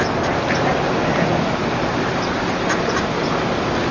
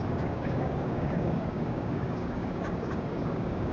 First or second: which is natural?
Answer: first